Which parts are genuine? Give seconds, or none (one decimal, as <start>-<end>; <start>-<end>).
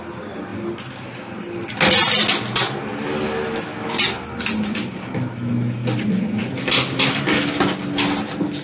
0.0-8.6